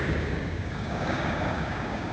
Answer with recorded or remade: remade